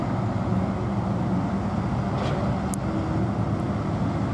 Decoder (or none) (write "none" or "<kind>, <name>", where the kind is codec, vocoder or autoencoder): none